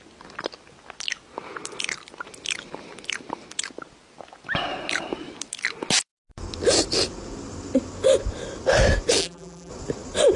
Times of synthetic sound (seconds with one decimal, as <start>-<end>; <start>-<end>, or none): 9.2-9.7